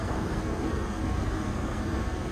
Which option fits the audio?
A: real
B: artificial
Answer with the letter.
B